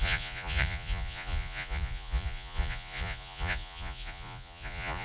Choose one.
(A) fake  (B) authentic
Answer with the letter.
A